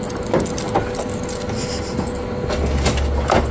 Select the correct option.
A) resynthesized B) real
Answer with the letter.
B